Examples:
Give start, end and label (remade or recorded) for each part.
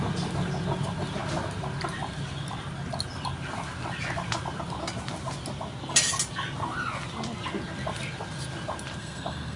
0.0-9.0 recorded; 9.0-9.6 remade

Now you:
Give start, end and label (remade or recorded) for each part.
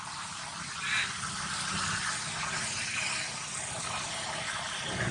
0.0-5.1 recorded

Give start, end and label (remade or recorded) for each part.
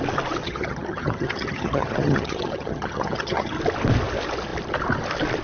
0.0-0.4 recorded; 0.4-3.6 remade; 3.6-5.4 recorded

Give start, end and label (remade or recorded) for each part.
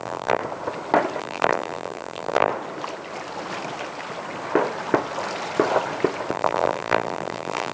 0.0-0.4 remade; 0.4-1.2 recorded; 1.2-2.5 remade; 2.5-6.3 recorded; 6.3-7.7 remade